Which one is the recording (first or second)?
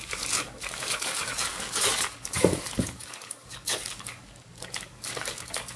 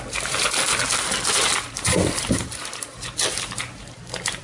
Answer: second